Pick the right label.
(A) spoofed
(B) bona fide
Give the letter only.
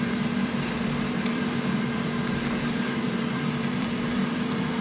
A